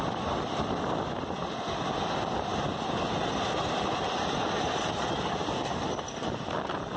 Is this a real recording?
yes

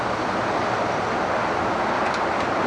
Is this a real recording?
yes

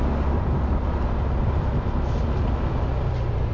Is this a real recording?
yes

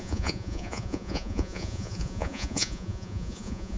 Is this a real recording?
no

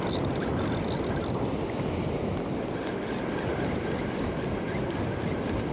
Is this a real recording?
yes